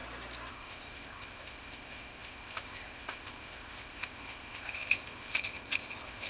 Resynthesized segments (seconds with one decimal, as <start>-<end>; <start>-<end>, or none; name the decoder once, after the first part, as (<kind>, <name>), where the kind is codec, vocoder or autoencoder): 0.5-6.3 (codec, ZipCodec)